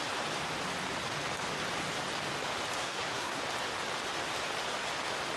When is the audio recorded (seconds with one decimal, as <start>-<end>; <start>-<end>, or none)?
0.0-2.8; 3.4-5.4